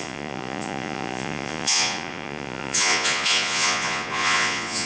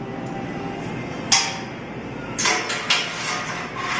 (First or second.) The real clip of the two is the second